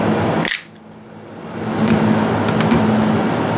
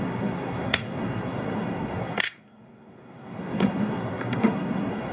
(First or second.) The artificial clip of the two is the second